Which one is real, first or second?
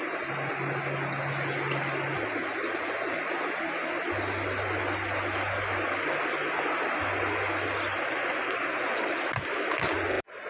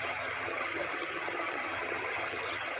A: first